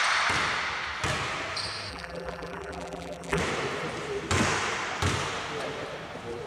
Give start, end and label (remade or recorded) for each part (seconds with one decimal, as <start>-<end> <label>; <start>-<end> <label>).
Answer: 0.0-1.9 recorded; 1.9-3.4 remade; 3.4-6.5 recorded